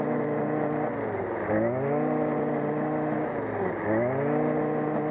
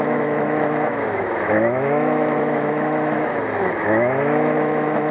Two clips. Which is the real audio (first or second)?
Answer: first